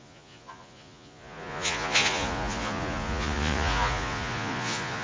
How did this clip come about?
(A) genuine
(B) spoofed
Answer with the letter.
B